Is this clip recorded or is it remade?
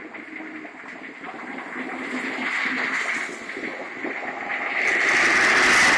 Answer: recorded